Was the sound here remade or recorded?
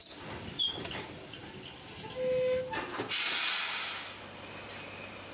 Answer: recorded